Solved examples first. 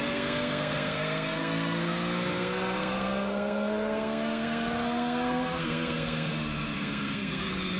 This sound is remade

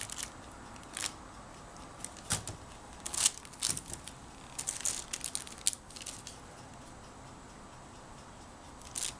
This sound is recorded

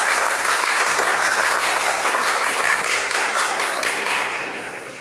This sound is remade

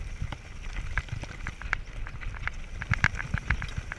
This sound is recorded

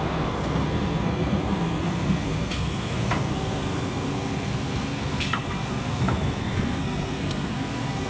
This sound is remade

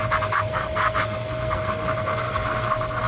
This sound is remade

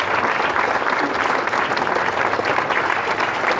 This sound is recorded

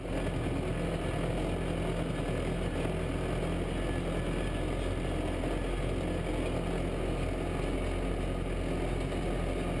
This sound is recorded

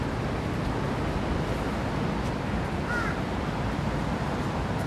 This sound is recorded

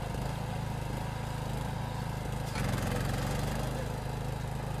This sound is recorded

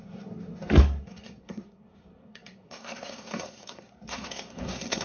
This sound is remade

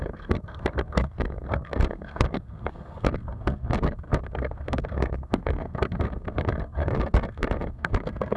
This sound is remade